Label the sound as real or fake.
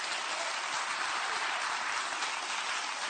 real